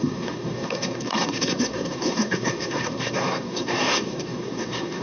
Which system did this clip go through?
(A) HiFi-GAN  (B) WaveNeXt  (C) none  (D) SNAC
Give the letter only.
D